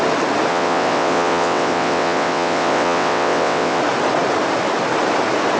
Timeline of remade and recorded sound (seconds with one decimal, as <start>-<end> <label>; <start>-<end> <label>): 0.0-0.5 recorded; 0.5-3.8 remade; 3.8-5.6 recorded